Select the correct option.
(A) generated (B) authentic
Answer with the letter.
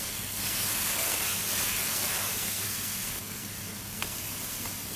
A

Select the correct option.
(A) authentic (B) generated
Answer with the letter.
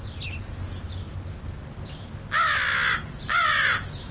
A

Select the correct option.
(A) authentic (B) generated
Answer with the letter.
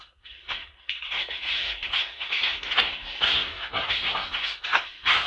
B